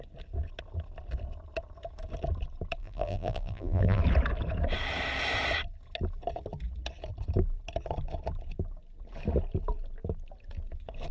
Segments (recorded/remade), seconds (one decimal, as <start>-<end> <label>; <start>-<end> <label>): 0.0-2.8 recorded; 2.8-4.0 remade; 4.0-11.1 recorded